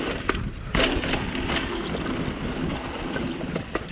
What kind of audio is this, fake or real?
real